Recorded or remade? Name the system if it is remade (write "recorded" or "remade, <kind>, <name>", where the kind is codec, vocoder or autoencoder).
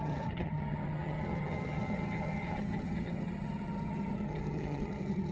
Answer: remade, vocoder, HiFi-GAN